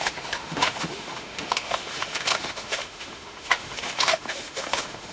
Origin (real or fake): fake